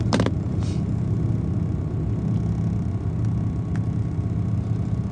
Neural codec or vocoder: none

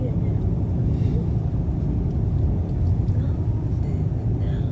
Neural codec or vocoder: none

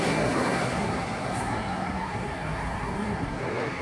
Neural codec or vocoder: codec, SNAC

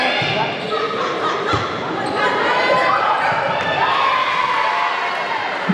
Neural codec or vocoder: none